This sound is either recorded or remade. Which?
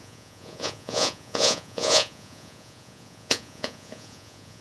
remade